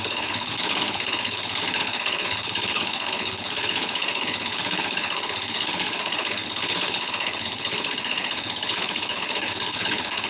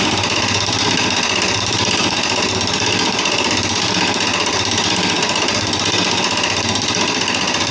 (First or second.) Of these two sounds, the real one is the second